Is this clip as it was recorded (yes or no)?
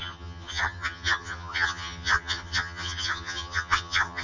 no